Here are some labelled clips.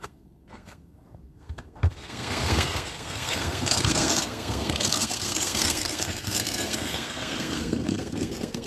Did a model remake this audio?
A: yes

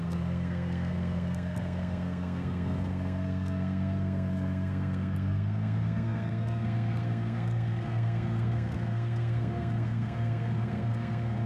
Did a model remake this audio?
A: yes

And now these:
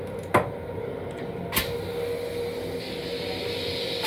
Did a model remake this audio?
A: no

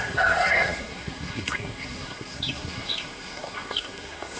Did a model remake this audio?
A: yes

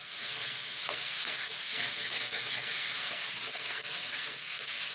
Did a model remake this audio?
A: yes